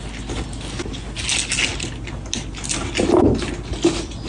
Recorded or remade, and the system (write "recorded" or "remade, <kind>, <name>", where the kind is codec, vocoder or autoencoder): recorded